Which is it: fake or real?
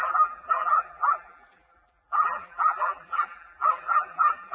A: fake